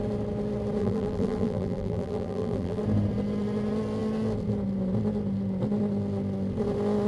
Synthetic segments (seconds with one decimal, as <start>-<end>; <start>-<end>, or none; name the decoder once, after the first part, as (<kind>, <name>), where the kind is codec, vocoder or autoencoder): 0.8-2.8 (vocoder, BigVGAN v2)